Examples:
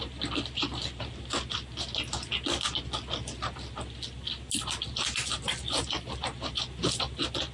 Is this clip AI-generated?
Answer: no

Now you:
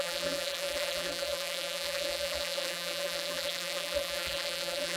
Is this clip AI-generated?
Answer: yes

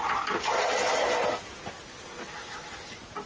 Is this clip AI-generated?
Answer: no